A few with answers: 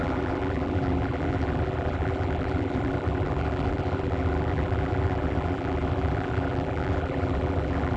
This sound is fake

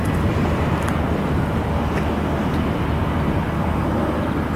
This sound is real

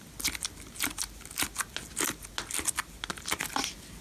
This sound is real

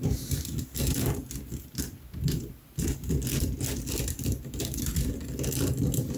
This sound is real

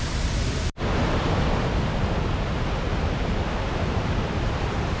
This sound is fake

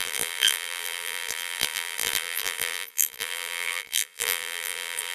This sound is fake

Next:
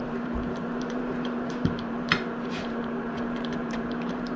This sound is fake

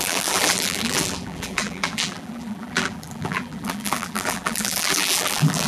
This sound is fake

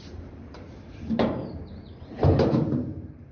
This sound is fake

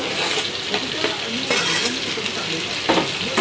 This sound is real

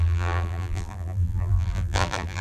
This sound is fake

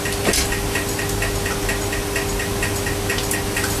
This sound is real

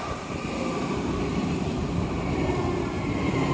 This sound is fake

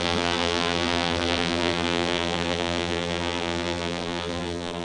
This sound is fake